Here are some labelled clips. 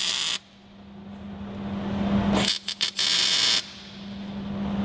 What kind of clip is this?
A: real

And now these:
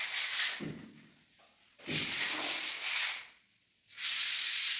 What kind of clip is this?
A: real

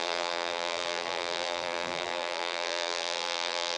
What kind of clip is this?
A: fake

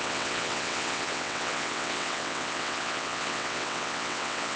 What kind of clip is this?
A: fake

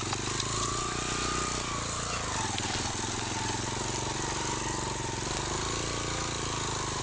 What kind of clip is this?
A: real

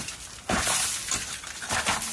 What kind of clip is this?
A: real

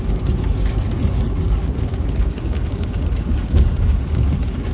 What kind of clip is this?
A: fake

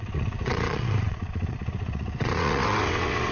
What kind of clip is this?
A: fake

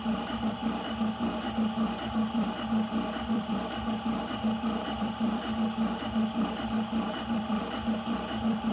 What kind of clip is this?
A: fake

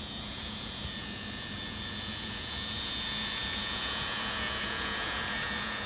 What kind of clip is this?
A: fake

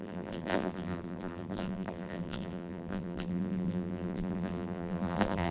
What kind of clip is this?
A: fake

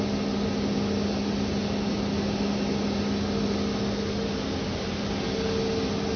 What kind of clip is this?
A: real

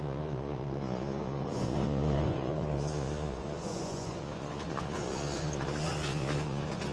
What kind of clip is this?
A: fake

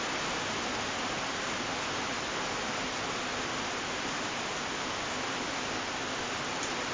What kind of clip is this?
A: real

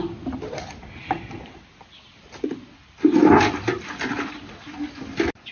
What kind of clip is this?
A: real